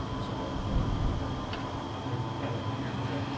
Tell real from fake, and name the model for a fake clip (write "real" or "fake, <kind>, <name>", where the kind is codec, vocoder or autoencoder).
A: real